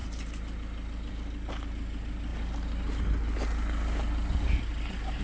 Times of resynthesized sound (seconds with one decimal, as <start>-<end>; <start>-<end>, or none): none